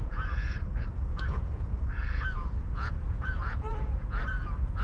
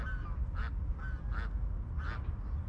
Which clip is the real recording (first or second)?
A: second